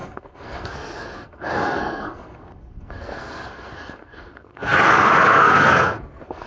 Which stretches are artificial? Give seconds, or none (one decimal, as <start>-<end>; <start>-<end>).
0.0-6.5